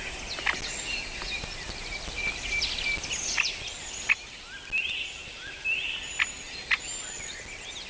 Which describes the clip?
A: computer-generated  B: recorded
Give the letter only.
B